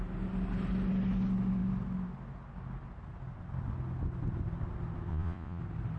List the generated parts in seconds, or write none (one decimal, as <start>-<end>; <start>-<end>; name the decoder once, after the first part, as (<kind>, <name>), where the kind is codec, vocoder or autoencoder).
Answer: 5.1-5.6 (vocoder, Vocos)